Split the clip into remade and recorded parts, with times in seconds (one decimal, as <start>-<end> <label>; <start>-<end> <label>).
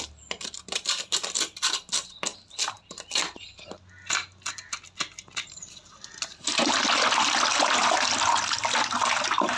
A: 0.0-9.6 recorded